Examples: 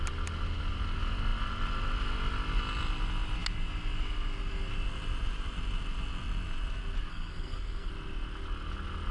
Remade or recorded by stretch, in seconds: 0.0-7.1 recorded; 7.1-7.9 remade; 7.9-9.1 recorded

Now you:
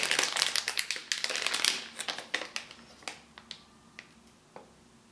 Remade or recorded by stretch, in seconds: 0.0-5.1 recorded

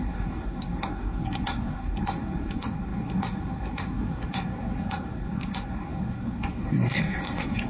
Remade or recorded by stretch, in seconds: 0.0-7.7 remade

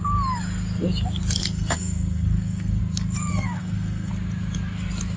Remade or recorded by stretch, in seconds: 0.0-1.4 recorded; 1.4-2.8 remade; 2.8-3.3 recorded; 3.3-4.1 remade; 4.1-5.2 recorded

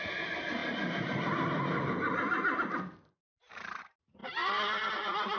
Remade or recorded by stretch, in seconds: 0.0-4.2 remade; 4.2-4.9 recorded; 4.9-5.4 remade